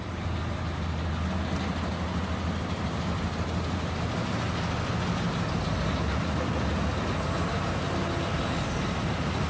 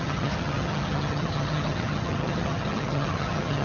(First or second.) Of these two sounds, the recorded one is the first